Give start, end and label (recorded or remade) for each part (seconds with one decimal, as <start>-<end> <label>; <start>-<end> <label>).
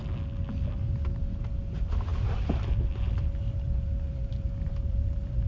0.0-1.1 recorded; 1.1-5.5 remade